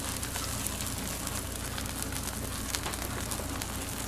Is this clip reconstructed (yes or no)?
no